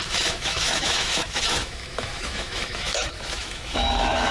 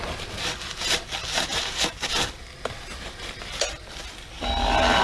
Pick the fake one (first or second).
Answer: first